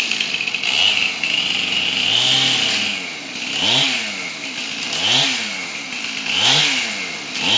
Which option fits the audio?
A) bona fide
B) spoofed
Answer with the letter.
A